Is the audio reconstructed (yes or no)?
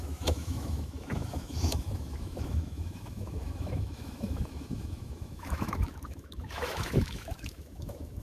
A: yes